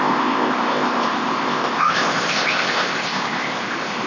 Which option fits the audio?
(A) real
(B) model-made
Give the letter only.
B